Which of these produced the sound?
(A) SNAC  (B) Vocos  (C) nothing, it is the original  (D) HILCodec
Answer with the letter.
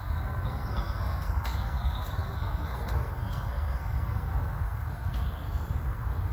A